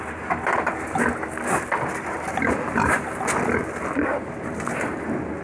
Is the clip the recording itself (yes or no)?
yes